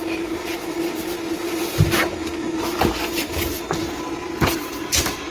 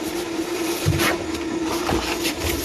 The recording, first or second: first